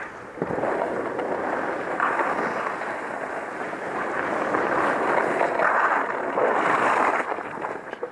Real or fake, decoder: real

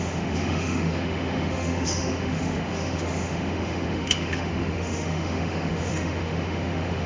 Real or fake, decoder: fake, autoencoder, DAC-VAE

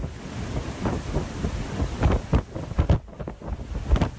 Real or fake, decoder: real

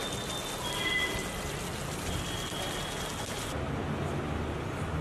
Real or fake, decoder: real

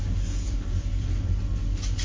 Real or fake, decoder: real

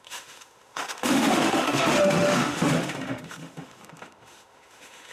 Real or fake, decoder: fake, autoencoder, DAC-VAE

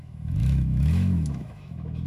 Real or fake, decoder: fake, autoencoder, DAC-VAE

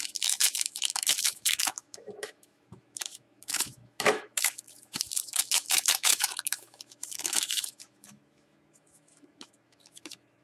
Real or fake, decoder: fake, autoencoder, DAC-VAE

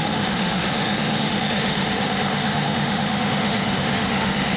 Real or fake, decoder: fake, autoencoder, DAC-VAE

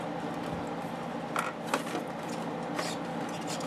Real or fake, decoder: real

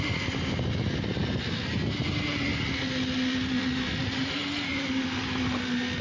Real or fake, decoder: real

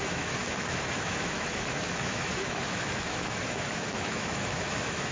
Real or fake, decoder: fake, autoencoder, DAC-VAE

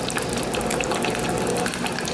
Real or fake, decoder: real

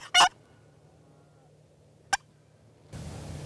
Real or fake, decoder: real